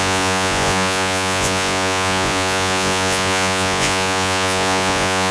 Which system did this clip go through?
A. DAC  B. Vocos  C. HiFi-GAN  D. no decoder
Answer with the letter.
B